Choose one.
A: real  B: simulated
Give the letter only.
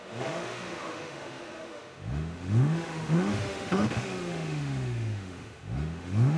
B